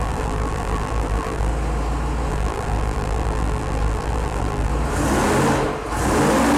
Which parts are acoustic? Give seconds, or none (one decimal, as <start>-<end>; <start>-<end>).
1.5-2.3; 4.7-6.6